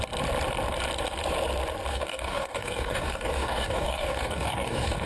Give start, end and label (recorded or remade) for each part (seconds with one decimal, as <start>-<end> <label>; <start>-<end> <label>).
0.0-1.9 recorded; 1.9-5.1 remade